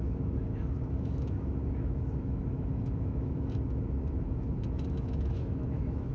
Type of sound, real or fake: fake